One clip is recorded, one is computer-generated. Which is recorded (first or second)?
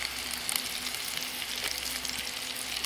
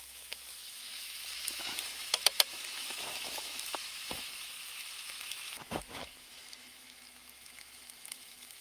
first